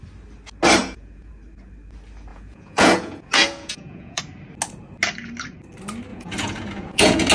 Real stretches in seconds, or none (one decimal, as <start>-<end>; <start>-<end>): 0.0-0.8; 1.3-2.3; 4.2-6.1